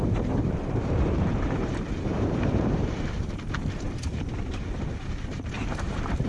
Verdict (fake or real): fake